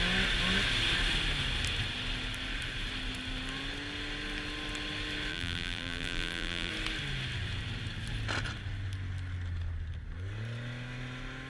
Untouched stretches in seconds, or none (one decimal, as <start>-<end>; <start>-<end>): 0.0-5.3; 6.7-11.5